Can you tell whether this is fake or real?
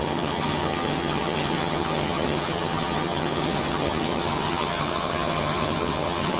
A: fake